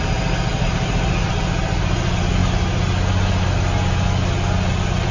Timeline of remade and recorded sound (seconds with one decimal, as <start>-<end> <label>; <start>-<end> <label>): 0.0-0.5 recorded; 0.5-1.3 remade; 1.3-5.1 recorded